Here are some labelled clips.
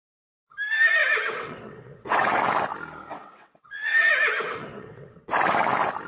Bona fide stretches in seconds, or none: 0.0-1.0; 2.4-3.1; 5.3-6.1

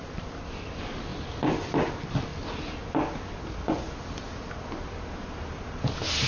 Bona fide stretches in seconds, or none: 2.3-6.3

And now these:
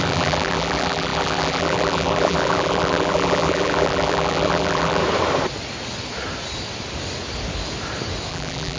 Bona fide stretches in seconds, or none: 5.0-8.3

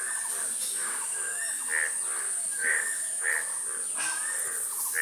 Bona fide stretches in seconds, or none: 0.0-0.7; 1.6-2.6; 3.3-5.0

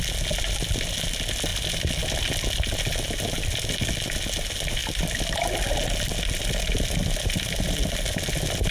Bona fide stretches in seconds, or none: 0.0-8.7

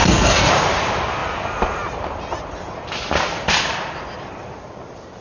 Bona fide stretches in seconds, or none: 0.5-5.2